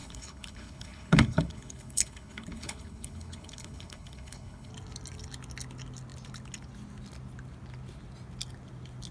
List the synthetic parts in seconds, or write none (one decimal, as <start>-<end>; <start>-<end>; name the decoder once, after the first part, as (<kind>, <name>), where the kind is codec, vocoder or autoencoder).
0.0-4.7 (codec, HILCodec)